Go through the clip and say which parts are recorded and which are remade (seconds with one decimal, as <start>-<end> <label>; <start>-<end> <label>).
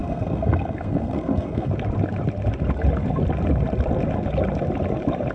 0.0-1.7 remade; 1.7-5.3 recorded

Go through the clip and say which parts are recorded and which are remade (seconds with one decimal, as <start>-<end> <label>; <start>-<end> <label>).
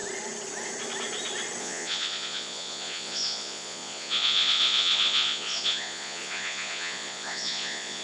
0.0-1.6 recorded; 1.6-8.0 remade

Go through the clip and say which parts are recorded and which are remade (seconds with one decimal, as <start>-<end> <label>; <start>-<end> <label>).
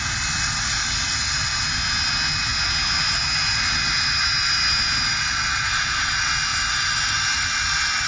0.0-8.1 recorded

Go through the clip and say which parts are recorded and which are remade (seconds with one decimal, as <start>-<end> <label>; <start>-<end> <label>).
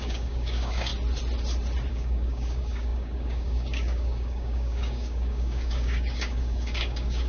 0.0-0.9 remade; 0.9-1.9 recorded; 1.9-7.3 remade